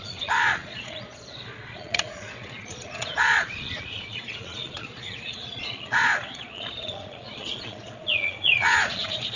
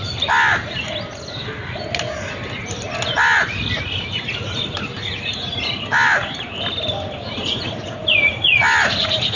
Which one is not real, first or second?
first